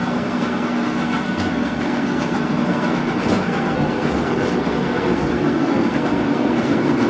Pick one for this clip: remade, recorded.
remade